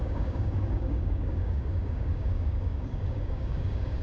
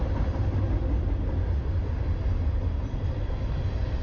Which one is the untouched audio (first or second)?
second